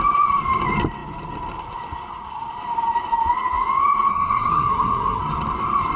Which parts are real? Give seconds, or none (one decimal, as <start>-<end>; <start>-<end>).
0.0-4.1; 5.2-6.0